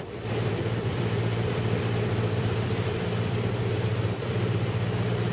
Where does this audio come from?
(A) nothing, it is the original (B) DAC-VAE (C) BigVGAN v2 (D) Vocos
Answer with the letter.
C